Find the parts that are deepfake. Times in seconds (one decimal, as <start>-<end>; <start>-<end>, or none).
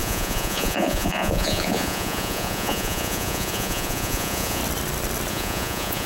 0.0-4.6; 5.3-6.1